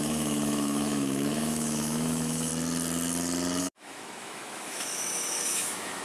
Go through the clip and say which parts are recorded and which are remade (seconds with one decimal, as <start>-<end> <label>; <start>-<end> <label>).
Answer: 0.0-2.5 remade; 2.5-3.6 recorded; 3.6-6.0 remade